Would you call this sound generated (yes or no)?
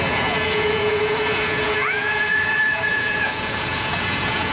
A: yes